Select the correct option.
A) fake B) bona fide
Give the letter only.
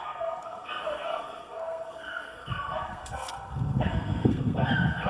A